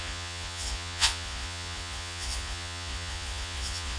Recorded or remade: remade